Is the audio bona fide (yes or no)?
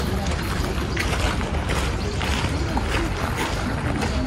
no